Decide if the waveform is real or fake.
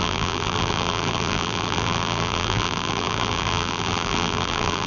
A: fake